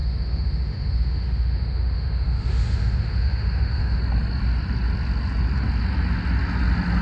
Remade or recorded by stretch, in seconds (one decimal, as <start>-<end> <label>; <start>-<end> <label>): 0.0-4.0 remade; 4.0-7.0 recorded